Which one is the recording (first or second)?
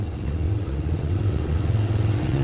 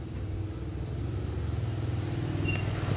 second